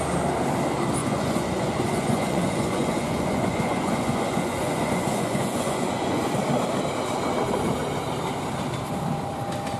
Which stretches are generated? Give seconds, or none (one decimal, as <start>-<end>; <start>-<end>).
1.0-6.2